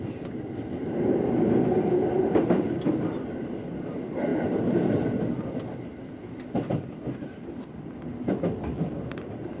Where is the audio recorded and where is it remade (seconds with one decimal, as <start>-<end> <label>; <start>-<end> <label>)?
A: 0.0-9.6 recorded